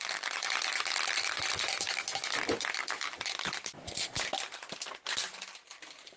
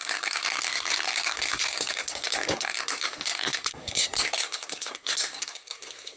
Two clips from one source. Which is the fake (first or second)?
second